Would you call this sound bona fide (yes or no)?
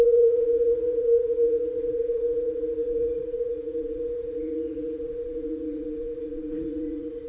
no